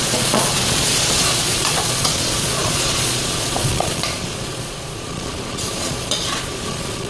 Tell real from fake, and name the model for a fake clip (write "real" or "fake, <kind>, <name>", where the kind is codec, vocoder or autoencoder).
fake, vocoder, Vocos